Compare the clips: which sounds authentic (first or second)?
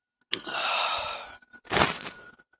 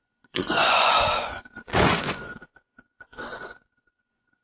first